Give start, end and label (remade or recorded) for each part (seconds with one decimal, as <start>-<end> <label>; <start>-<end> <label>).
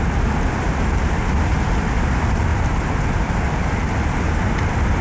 0.0-5.0 recorded